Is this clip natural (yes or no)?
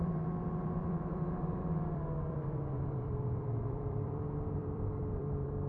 no